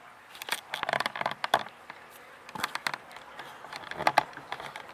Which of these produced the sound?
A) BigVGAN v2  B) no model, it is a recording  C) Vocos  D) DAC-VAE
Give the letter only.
B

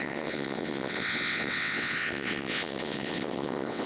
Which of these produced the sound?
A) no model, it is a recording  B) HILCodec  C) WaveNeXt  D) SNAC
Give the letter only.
C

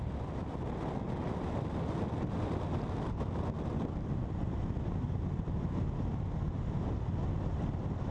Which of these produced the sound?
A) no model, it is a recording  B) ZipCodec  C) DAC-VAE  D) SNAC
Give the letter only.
A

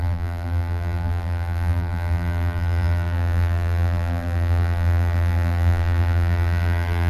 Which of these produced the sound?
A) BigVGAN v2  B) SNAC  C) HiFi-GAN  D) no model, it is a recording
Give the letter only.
A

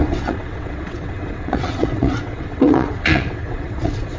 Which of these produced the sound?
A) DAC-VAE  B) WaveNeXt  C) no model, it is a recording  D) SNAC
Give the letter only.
B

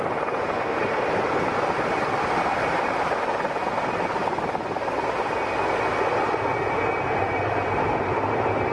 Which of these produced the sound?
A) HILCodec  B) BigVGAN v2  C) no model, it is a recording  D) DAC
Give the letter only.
C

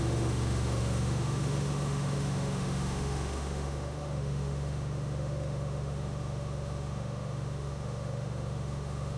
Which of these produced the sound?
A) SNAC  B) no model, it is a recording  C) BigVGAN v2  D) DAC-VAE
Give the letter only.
D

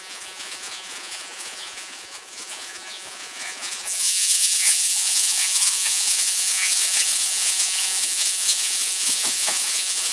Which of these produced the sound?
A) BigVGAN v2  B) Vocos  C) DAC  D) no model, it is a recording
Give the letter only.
B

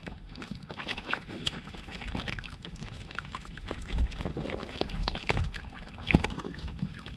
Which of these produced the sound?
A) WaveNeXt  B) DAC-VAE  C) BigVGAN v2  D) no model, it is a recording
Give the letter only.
B